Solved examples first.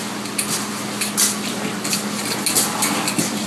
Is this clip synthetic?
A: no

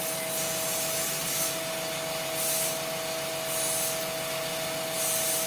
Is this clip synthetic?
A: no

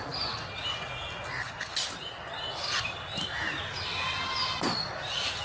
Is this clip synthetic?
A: no